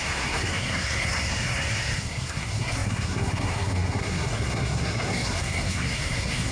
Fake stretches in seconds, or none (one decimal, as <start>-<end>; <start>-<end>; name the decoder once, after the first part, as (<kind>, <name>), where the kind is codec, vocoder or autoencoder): 0.0-6.5 (codec, SNAC)

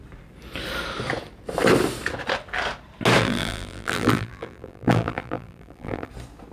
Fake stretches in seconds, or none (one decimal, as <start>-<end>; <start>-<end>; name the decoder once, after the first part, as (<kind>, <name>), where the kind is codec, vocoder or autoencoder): 3.2-6.1 (vocoder, BigVGAN v2)